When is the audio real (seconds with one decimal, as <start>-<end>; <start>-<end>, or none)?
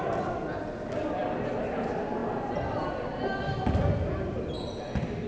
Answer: 0.0-5.3